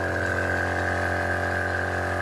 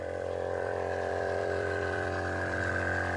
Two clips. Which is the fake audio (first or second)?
second